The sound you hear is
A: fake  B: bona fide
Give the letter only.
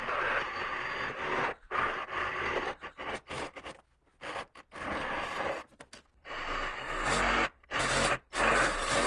B